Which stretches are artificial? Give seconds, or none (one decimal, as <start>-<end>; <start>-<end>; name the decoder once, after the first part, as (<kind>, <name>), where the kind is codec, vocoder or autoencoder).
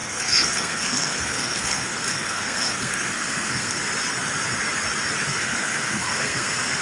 0.0-3.9 (codec, SNAC); 5.3-6.8